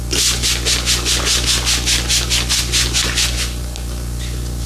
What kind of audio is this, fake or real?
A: real